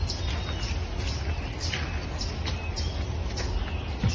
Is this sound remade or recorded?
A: recorded